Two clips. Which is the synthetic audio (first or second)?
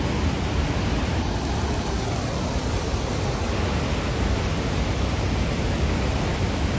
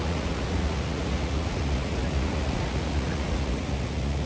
second